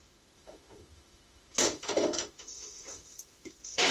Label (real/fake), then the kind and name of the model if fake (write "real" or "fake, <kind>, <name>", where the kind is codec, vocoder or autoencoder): fake, autoencoder, DAC-VAE